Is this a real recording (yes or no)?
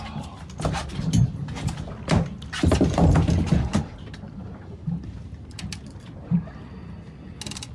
yes